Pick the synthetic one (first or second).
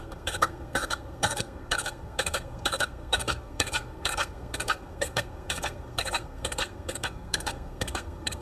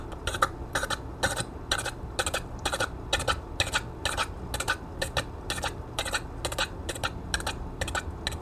first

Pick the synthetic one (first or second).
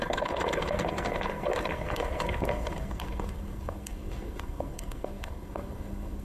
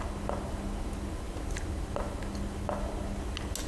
first